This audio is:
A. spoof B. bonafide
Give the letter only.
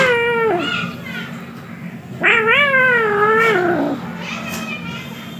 B